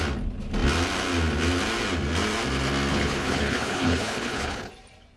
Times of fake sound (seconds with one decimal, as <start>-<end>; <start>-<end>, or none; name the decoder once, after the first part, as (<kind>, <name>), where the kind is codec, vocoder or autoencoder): 2.9-4.7 (codec, HILCodec)